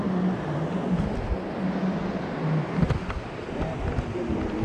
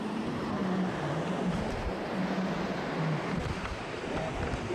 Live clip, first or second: first